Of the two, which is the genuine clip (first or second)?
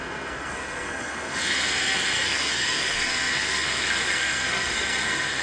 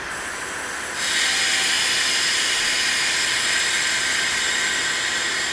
second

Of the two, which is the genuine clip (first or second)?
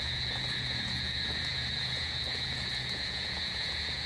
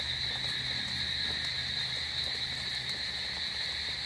second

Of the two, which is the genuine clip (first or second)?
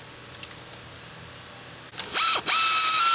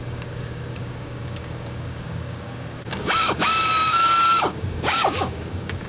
first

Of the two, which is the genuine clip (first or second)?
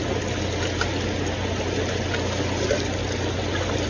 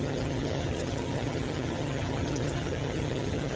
first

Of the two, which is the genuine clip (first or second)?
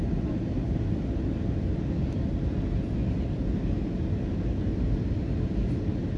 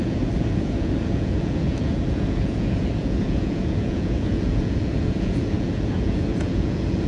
first